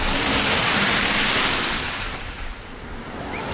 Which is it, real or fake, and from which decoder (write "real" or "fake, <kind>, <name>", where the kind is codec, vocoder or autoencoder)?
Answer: fake, vocoder, BigVGAN v2